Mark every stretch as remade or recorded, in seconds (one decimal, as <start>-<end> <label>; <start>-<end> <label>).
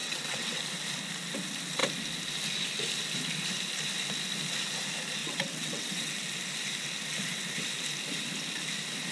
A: 0.0-0.6 remade; 0.6-5.2 recorded; 5.2-6.1 remade; 6.1-9.1 recorded